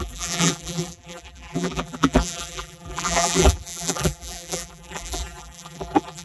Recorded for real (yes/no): no